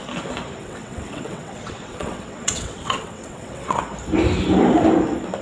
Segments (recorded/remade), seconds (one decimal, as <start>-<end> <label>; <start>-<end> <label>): 0.0-0.6 recorded; 0.6-3.8 remade; 3.8-5.4 recorded